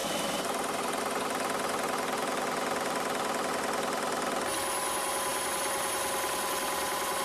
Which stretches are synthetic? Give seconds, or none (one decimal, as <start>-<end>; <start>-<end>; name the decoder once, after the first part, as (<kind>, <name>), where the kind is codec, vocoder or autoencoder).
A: 0.0-1.0 (vocoder, BigVGAN v2)